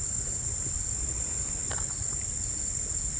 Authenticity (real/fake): real